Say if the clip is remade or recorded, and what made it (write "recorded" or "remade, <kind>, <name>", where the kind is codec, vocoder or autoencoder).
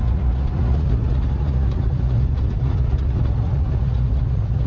remade, vocoder, Vocos